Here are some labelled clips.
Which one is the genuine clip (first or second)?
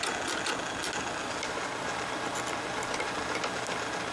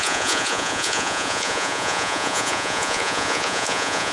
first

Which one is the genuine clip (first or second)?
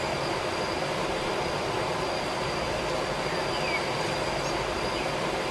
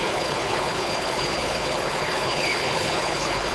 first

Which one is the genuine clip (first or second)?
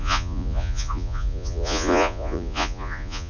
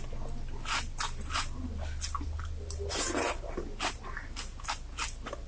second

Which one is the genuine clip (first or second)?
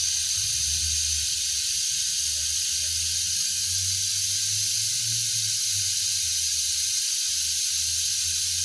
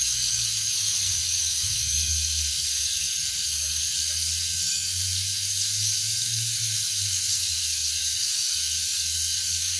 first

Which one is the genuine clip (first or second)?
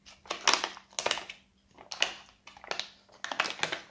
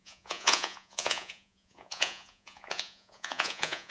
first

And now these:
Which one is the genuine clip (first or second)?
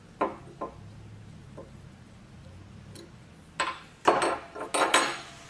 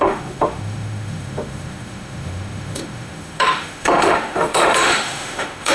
first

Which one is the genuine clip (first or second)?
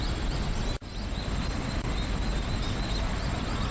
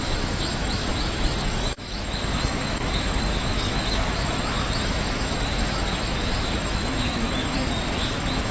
first